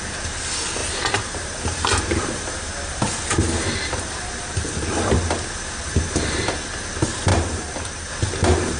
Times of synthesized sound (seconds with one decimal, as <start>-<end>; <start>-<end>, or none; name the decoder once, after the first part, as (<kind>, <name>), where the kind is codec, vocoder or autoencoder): 0.8-2.3 (vocoder, BigVGAN v2); 7.3-8.1